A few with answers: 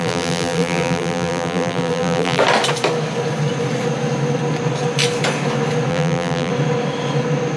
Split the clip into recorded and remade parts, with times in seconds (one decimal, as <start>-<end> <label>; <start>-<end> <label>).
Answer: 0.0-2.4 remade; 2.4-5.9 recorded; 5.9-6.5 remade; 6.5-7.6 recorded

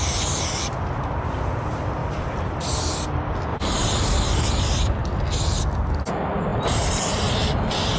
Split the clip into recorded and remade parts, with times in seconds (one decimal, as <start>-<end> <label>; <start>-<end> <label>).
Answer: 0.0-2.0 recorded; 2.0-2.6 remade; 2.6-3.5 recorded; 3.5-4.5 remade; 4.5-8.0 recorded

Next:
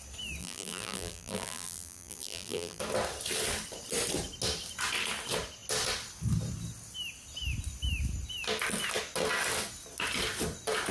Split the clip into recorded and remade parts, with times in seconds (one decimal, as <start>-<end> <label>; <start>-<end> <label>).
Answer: 0.0-0.4 recorded; 0.4-2.8 remade; 2.8-10.9 recorded

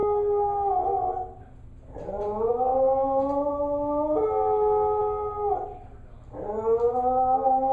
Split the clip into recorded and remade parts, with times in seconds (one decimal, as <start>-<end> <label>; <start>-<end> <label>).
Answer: 0.0-7.7 recorded

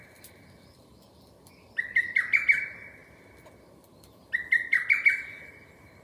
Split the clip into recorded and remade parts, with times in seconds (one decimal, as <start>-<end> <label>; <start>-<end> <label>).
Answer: 0.0-6.0 recorded

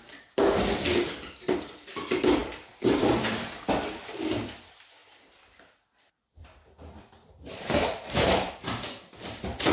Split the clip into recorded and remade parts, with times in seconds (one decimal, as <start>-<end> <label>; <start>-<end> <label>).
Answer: 0.0-9.7 remade